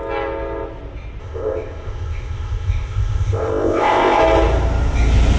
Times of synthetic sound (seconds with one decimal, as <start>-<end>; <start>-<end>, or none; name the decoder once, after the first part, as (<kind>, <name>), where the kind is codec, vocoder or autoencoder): 1.2-4.2 (codec, ZipCodec)